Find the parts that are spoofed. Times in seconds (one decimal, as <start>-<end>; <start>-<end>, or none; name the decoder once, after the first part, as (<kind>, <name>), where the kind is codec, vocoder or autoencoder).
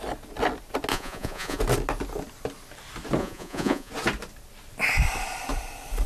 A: 0.9-1.6 (vocoder, Vocos); 3.2-3.9